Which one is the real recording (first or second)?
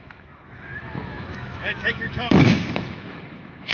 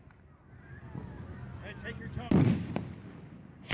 second